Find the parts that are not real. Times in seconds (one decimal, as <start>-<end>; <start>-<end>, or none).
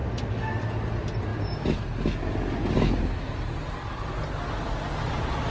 none